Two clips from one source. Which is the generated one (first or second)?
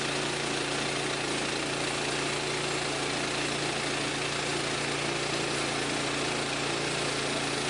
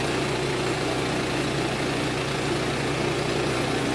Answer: second